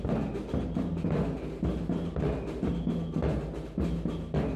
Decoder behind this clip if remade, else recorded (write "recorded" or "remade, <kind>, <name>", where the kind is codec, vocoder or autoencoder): recorded